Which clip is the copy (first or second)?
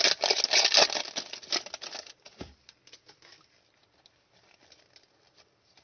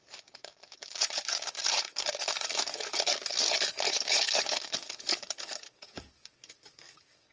second